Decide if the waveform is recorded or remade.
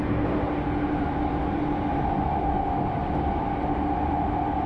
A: recorded